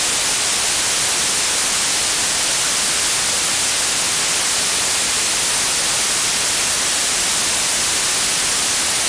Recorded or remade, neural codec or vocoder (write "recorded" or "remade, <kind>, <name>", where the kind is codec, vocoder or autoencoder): recorded